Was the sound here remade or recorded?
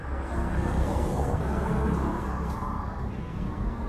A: remade